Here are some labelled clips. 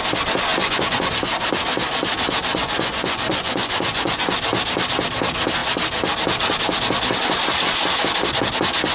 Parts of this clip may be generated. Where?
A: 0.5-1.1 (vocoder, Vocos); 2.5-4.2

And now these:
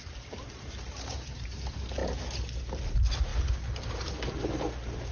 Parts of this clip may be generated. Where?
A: 0.0-5.1 (vocoder, BigVGAN v2)

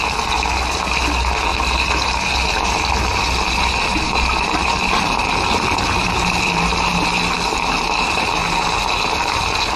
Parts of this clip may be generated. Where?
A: none

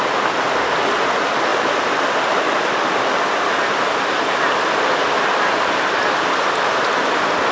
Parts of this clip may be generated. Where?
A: none

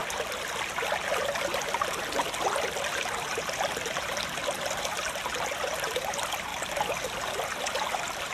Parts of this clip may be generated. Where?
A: none

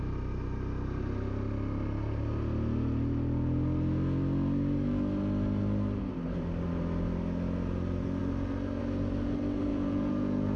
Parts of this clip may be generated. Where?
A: 9.7-10.6 (vocoder, Vocos)